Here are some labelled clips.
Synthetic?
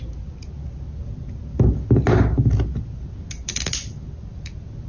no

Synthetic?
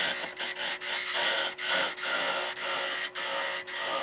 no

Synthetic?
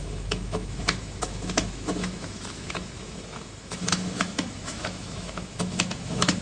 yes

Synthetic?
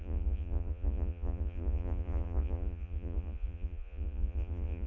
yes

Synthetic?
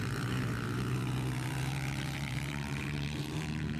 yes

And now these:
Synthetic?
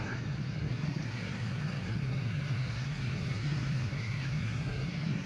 yes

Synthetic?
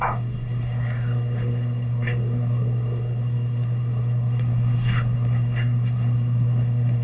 yes